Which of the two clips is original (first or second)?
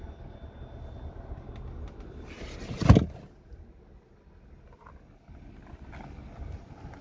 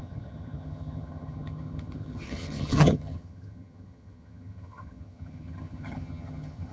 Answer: first